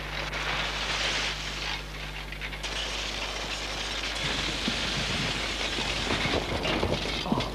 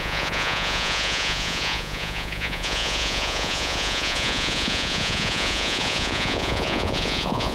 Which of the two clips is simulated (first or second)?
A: second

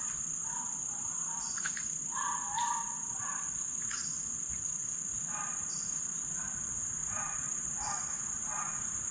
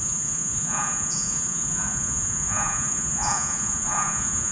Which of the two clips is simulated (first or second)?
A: second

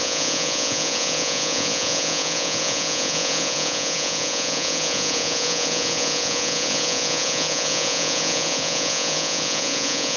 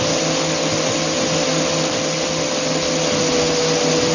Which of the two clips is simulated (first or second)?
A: first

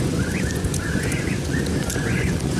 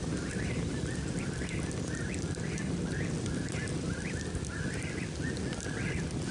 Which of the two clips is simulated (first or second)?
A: first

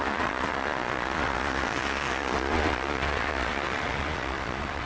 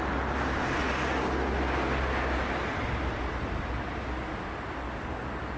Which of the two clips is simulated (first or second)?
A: first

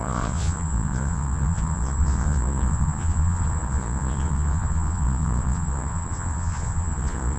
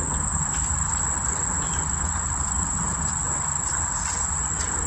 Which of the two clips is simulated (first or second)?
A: first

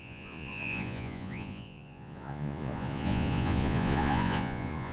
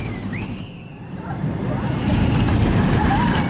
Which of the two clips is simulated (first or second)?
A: first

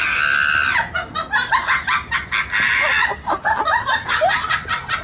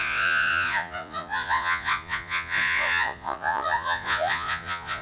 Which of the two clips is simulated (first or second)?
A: second